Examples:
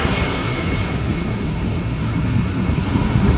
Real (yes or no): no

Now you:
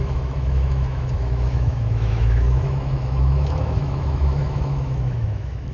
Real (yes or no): no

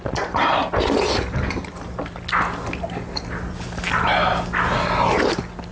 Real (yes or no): yes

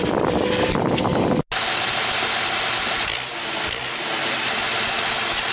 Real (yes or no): yes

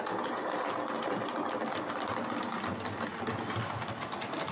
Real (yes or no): yes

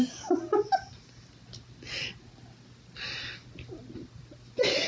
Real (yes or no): yes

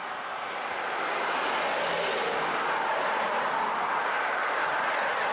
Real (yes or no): yes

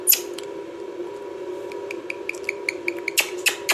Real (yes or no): yes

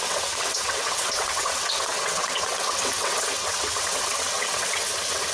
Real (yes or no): no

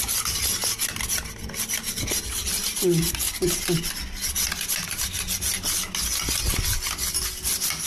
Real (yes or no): yes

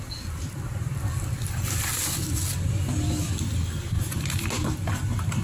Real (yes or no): yes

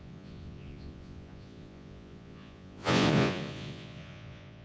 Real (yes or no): no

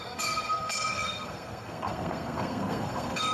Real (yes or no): no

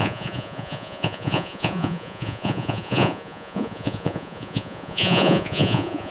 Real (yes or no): no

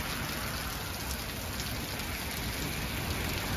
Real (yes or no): yes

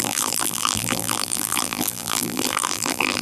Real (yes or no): no